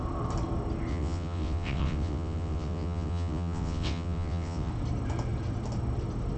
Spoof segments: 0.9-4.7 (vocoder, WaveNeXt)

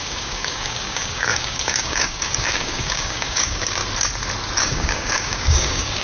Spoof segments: 0.0-3.8 (codec, DAC); 4.6-6.0

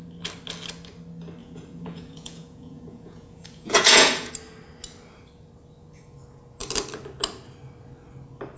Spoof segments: 1.4-4.3 (vocoder, Vocos)

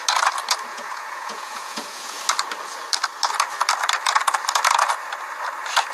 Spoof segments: 0.7-2.2 (vocoder, Vocos)

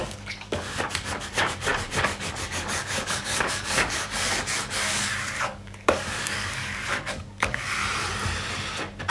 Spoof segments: 0.0-7.8 (codec, DAC)